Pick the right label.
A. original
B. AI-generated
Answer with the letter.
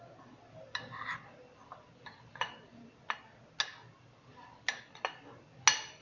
A